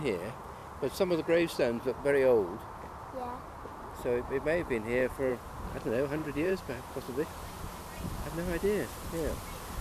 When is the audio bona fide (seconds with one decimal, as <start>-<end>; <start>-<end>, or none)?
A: 0.0-6.2; 7.7-9.8